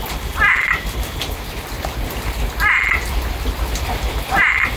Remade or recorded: recorded